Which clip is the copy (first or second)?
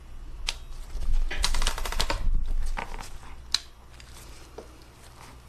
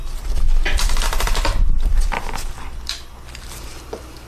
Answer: second